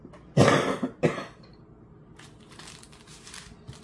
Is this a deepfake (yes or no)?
no